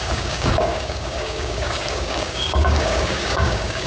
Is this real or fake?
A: fake